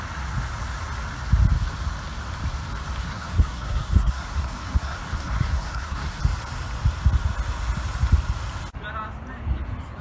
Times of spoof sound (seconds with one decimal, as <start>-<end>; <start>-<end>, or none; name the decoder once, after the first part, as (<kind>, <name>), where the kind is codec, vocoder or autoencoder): 3.0-6.2 (codec, SNAC)